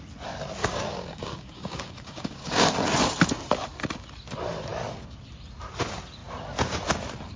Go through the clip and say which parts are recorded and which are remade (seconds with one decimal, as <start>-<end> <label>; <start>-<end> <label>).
0.0-0.6 recorded; 0.6-2.7 remade; 2.7-7.4 recorded